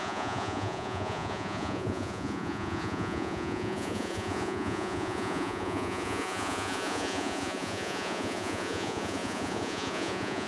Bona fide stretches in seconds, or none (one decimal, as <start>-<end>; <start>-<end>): none